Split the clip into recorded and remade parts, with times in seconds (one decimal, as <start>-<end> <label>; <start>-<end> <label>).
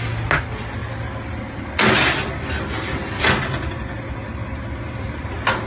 0.0-5.7 recorded